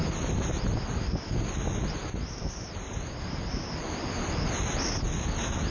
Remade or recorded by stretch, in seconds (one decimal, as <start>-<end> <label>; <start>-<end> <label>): 0.0-5.7 recorded